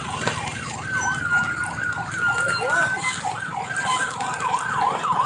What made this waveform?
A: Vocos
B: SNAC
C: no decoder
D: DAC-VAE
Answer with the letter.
C